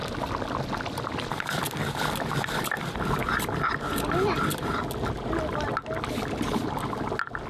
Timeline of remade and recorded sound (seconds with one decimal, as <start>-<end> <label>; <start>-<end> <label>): 0.0-7.5 recorded